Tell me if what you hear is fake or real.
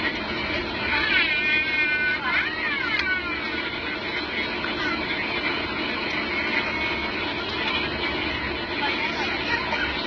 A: real